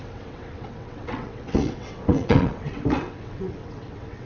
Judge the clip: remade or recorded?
remade